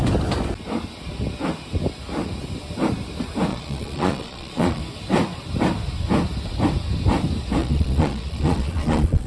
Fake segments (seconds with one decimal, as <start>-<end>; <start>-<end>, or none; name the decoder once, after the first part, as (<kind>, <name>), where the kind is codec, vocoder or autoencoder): 3.5-4.8 (vocoder, Vocos); 7.6-9.3